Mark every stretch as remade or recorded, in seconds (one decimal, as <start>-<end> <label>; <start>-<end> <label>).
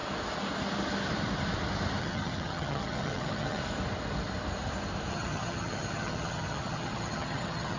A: 0.0-2.0 recorded; 2.0-3.6 remade; 3.6-5.1 recorded; 5.1-7.8 remade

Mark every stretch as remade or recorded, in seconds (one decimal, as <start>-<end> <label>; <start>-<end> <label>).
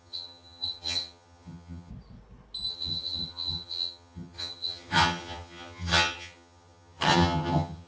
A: 0.0-1.9 remade; 1.9-2.7 recorded; 2.7-7.9 remade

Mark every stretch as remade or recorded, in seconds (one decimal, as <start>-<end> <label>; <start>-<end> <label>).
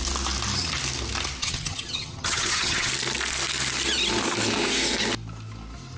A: 0.0-1.4 recorded; 1.4-2.9 remade; 2.9-6.0 recorded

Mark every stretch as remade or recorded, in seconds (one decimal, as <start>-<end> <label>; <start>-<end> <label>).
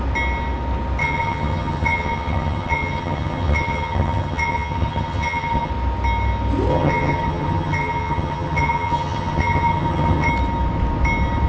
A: 0.0-1.0 recorded; 1.0-5.7 remade; 5.7-6.7 recorded; 6.7-10.3 remade; 10.3-11.5 recorded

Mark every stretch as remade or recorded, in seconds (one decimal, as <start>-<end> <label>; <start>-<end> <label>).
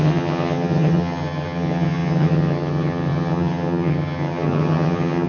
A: 0.0-5.3 remade